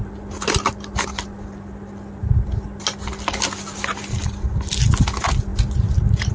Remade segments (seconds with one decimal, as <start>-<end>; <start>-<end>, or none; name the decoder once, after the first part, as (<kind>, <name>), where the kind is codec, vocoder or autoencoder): none